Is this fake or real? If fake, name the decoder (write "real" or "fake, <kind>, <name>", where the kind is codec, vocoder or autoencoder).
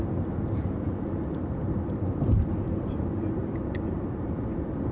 real